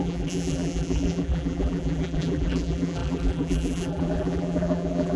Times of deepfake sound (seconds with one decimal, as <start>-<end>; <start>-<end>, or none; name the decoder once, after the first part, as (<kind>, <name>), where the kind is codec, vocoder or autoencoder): 0.0-5.2 (vocoder, BigVGAN v2)